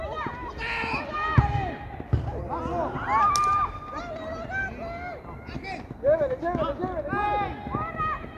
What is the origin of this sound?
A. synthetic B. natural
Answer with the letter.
B